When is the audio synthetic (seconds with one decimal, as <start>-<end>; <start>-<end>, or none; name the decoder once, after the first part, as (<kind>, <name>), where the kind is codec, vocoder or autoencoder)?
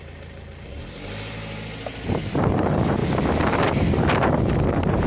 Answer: 0.0-1.4 (vocoder, BigVGAN v2); 2.5-3.0; 4.4-5.1